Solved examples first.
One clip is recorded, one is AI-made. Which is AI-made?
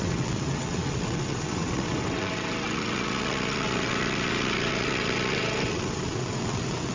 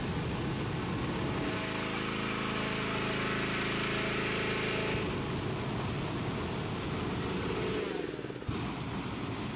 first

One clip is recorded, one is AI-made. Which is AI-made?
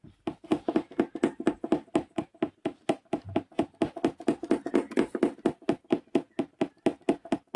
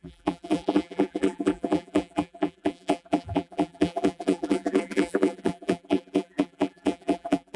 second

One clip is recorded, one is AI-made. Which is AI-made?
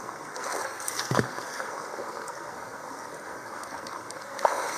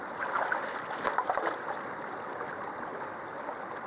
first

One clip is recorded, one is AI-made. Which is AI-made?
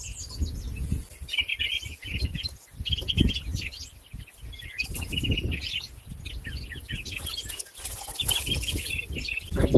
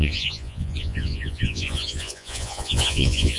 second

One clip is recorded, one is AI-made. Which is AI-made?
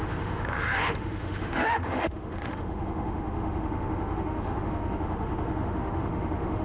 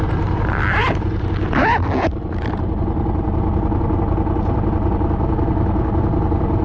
first